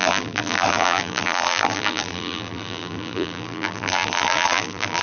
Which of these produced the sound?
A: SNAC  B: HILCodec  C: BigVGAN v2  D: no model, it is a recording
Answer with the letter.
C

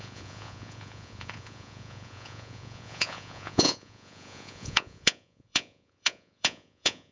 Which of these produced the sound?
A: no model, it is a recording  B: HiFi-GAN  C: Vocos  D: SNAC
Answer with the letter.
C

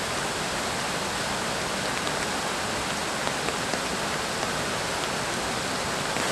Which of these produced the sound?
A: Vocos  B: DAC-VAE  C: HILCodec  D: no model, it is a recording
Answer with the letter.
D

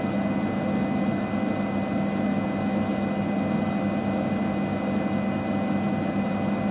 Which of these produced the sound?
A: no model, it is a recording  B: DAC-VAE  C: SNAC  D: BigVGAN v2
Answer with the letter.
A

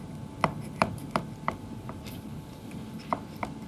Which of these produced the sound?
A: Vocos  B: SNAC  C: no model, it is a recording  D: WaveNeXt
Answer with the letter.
C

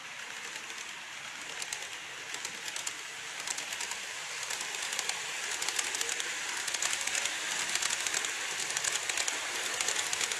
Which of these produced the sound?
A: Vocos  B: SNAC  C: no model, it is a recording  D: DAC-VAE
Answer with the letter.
C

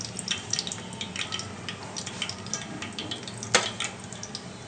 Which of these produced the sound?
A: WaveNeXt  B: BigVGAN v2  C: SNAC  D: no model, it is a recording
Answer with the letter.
D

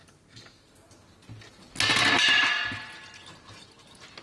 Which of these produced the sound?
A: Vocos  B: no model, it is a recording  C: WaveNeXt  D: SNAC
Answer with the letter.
B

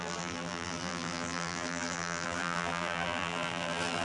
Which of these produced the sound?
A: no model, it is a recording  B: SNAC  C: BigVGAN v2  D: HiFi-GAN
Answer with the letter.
C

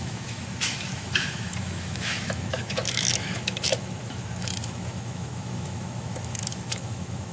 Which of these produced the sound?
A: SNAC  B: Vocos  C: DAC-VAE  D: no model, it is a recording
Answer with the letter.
C